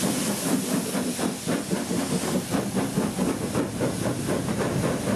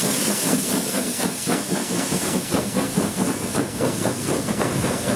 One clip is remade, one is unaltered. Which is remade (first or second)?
second